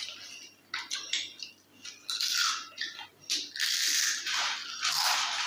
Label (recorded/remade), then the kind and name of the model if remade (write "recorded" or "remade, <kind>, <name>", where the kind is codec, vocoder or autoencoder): recorded